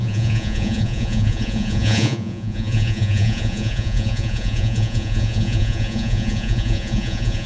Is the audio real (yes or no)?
no